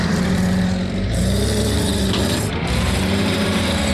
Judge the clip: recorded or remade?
remade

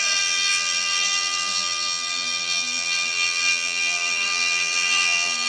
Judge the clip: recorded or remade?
remade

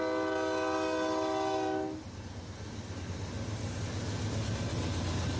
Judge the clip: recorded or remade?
recorded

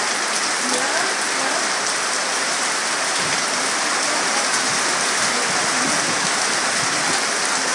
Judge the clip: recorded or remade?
recorded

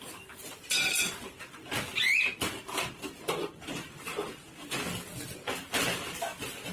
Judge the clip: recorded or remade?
recorded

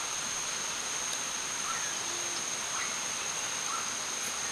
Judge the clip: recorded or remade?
recorded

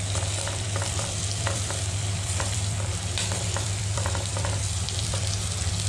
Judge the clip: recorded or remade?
remade